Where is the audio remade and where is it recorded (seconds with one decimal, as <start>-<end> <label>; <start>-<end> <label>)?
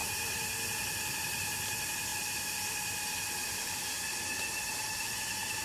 0.0-5.6 recorded